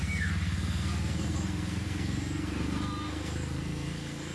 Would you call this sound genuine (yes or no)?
no